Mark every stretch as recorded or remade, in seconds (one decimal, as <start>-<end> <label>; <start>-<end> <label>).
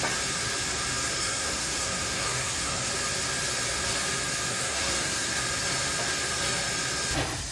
0.0-1.1 recorded; 1.1-2.9 remade; 2.9-4.5 recorded; 4.5-5.4 remade; 5.4-7.5 recorded